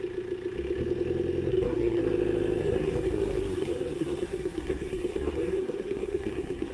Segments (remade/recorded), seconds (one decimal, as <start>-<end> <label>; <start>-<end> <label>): 0.0-1.5 recorded; 1.5-2.0 remade; 2.0-2.6 recorded; 2.6-6.7 remade